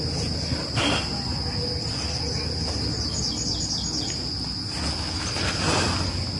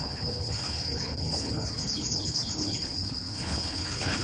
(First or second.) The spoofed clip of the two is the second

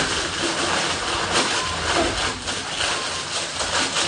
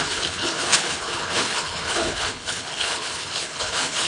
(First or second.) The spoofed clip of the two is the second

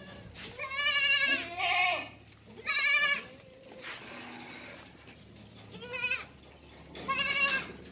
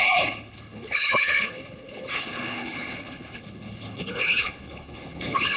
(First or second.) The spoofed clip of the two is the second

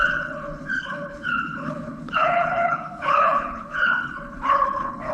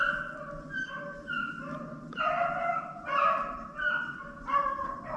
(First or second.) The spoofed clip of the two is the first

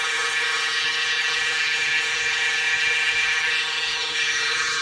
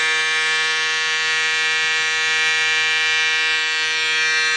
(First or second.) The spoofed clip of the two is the first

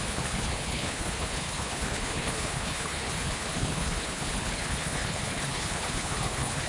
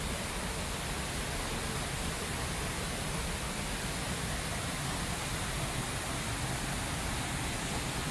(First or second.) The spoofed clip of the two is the first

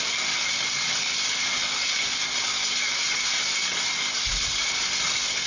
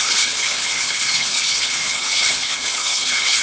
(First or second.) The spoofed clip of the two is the second